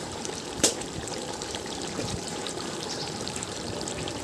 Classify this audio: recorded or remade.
remade